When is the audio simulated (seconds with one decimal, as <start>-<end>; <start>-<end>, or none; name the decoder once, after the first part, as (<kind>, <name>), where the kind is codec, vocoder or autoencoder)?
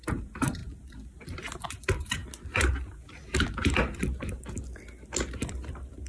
0.0-0.6 (vocoder, BigVGAN v2); 1.7-2.2